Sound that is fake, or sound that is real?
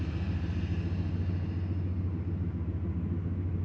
real